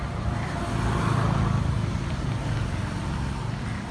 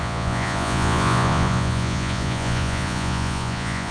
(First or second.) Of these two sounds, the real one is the first